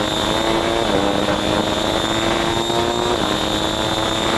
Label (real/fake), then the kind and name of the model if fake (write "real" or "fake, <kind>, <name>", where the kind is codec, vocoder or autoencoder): real